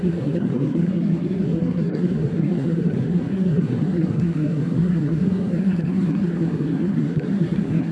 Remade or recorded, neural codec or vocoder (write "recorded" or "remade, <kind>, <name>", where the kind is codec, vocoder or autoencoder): remade, codec, SNAC